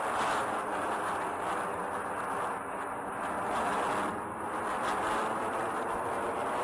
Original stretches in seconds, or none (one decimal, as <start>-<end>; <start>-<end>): 0.0-6.6